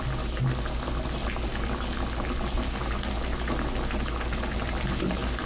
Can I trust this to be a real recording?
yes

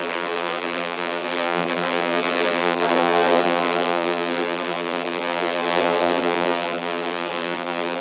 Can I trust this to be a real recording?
no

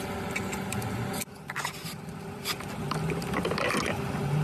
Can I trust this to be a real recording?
yes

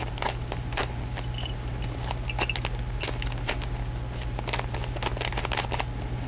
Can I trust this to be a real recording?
yes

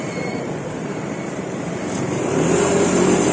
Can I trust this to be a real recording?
no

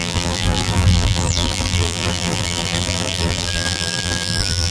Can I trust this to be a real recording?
no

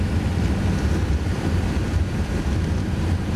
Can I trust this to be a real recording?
no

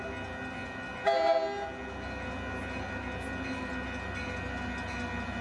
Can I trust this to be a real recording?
yes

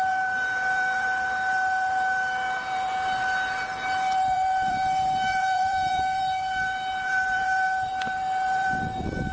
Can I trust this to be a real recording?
no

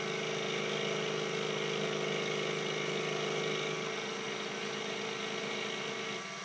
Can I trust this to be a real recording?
yes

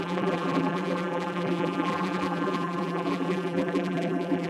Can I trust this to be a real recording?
no